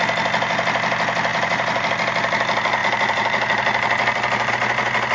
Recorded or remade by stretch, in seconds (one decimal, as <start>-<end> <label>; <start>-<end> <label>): 0.0-1.3 recorded; 1.3-1.9 remade; 1.9-2.8 recorded; 2.8-4.5 remade; 4.5-5.1 recorded